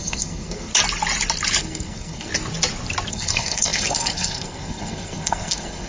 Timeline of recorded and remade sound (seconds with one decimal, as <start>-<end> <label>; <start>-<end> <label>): 0.0-0.7 remade; 0.7-1.6 recorded; 1.6-2.3 remade; 2.3-3.1 recorded; 3.1-5.9 remade